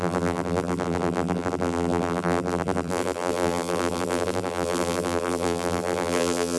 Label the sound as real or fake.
fake